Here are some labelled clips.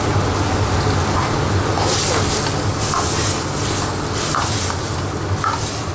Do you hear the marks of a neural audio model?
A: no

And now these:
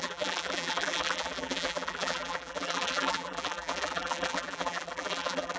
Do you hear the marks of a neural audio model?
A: yes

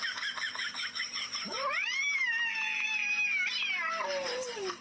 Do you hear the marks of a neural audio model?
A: yes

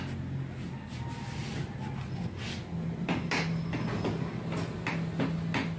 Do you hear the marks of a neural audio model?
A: no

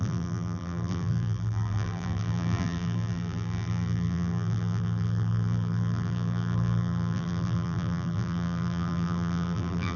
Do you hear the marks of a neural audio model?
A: yes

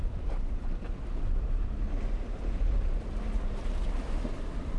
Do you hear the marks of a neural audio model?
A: no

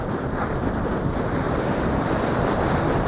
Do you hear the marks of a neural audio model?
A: no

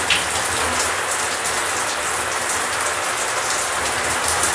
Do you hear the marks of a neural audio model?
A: no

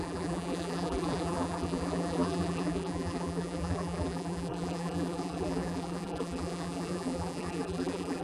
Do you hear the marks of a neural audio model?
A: yes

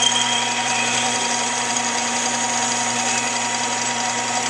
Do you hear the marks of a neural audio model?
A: yes